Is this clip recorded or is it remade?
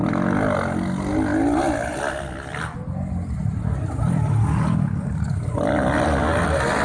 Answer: recorded